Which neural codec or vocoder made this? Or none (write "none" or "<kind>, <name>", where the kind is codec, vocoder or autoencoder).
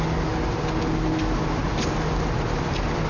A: none